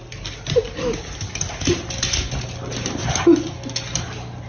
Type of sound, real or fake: real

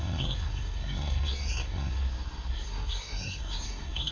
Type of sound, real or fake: fake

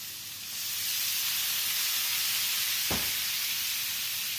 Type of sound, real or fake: real